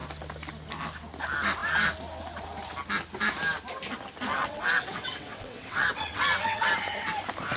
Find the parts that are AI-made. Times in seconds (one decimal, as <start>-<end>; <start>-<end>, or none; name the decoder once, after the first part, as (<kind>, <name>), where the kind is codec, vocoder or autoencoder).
4.4-6.7 (vocoder, WaveNeXt)